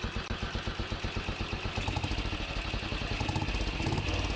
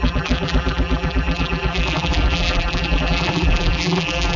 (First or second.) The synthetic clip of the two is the second